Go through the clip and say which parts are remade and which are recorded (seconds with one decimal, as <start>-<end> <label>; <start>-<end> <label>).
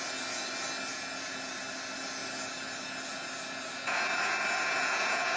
0.0-0.9 recorded; 0.9-1.5 remade; 1.5-4.8 recorded; 4.8-5.4 remade